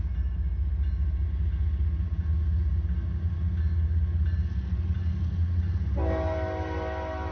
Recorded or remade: recorded